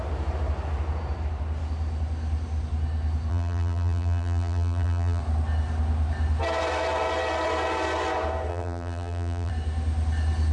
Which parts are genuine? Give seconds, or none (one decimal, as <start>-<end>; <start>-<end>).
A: 0.0-3.3; 5.2-8.5; 9.5-10.5